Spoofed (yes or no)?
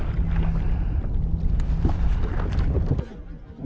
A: no